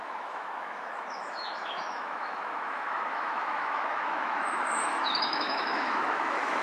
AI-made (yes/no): yes